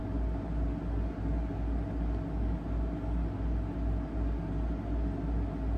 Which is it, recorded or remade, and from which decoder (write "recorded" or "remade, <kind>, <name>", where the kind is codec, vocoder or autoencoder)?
recorded